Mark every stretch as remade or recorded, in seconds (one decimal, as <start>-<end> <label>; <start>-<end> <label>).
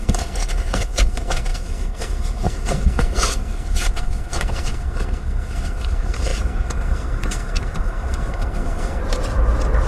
0.0-9.0 remade; 9.0-9.9 recorded